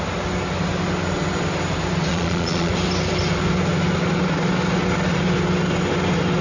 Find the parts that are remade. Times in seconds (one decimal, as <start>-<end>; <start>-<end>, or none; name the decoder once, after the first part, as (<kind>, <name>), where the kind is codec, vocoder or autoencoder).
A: 2.1-2.7 (vocoder, Vocos)